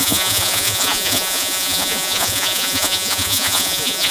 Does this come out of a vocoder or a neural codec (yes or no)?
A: yes